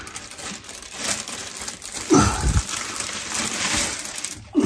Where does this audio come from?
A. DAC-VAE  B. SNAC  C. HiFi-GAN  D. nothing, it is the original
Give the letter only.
D